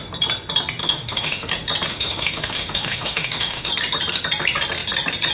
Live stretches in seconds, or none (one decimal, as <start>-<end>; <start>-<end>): 0.0-0.8; 1.5-1.9; 3.7-5.3